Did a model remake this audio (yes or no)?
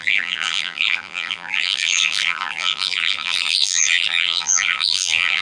yes